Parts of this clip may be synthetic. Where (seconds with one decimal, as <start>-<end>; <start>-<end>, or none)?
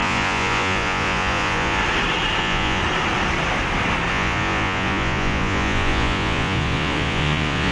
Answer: 0.0-1.8; 2.4-2.8; 4.1-7.7